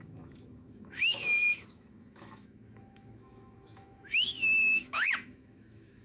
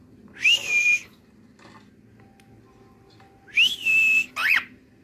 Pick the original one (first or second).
second